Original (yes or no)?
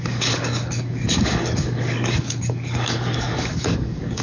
no